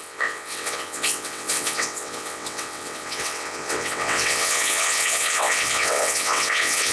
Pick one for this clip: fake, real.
fake